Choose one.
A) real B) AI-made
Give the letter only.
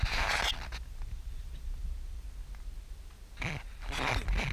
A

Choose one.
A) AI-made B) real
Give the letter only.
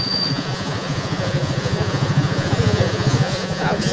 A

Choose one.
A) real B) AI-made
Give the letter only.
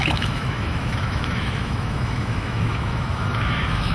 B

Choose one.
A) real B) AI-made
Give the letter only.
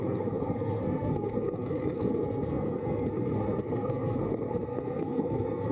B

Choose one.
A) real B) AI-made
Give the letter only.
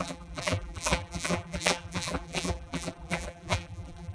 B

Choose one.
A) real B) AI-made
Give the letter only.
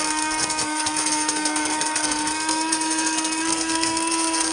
B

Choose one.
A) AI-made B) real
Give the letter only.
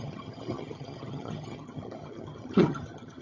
A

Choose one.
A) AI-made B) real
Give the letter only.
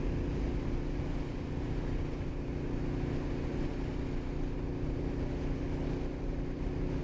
B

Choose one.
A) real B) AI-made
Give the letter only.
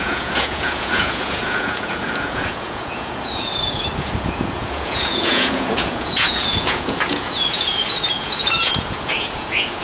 B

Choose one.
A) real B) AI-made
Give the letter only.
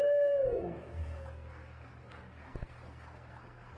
B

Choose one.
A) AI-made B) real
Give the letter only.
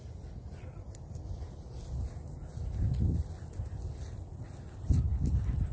B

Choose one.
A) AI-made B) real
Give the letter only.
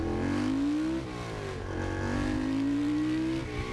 B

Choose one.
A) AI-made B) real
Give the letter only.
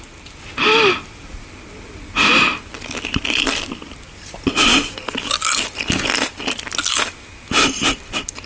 B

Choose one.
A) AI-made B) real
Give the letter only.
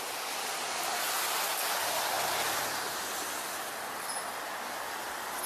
B